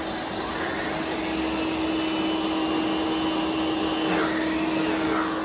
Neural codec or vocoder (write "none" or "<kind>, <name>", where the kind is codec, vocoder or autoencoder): none